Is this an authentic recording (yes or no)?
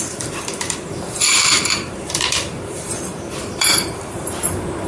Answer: no